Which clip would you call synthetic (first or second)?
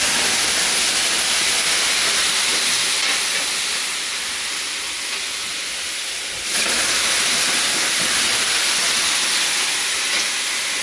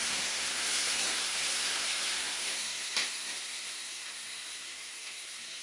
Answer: second